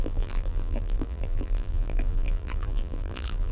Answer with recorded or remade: remade